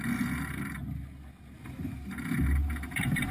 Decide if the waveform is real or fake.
real